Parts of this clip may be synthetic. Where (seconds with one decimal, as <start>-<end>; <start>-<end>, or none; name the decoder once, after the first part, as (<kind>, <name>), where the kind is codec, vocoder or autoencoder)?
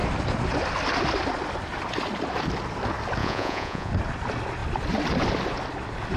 3.2-3.9 (vocoder, Vocos)